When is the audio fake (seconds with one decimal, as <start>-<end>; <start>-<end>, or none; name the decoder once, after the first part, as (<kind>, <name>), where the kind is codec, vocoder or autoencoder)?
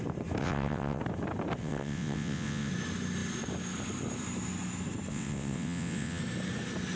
0.4-1.0 (vocoder, WaveNeXt); 1.6-2.7; 5.1-6.2